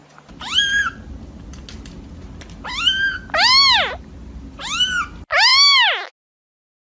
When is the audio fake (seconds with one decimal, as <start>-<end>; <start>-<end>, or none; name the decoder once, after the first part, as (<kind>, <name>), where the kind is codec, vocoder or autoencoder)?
none

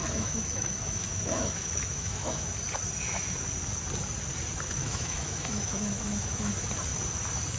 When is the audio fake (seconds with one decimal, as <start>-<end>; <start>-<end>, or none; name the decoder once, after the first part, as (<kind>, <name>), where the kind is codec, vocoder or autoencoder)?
0.0-2.5 (autoencoder, DAC-VAE); 4.8-6.5